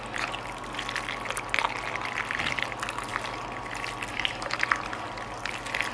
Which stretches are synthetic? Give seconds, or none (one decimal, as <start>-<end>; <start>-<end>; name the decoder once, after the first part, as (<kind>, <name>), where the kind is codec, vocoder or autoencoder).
4.1-5.1 (vocoder, BigVGAN v2)

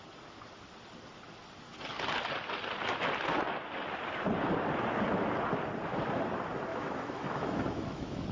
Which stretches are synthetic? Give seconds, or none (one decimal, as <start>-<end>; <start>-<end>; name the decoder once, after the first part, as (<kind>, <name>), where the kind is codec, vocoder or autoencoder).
6.7-8.3 (autoencoder, DAC-VAE)

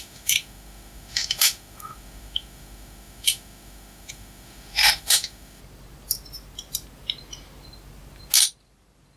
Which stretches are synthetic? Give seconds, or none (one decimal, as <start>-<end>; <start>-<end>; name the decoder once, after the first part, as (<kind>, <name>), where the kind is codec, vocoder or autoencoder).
0.0-5.6 (autoencoder, DAC-VAE)

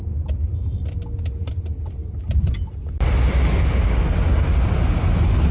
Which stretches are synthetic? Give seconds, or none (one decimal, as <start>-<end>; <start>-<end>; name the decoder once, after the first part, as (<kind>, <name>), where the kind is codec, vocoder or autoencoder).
none

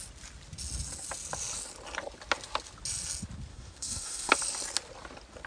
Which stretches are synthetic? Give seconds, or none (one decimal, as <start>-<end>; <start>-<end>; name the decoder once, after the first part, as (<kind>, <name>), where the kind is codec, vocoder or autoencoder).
3.5-4.3 (codec, SNAC)